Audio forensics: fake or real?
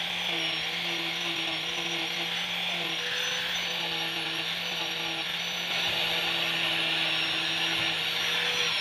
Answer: real